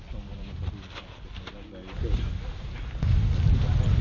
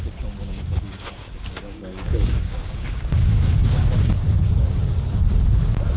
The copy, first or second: second